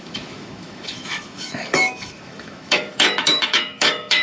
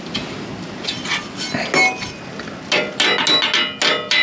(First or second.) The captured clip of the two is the second